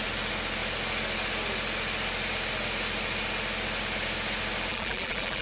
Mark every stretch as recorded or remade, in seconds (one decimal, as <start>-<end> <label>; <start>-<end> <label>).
0.0-4.7 recorded; 4.7-5.4 remade